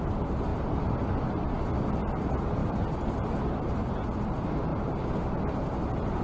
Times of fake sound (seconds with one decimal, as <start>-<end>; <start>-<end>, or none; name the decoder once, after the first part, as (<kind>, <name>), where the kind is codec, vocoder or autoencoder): none